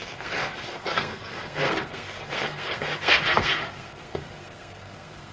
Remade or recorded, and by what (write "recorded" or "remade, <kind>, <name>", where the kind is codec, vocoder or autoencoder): remade, codec, SNAC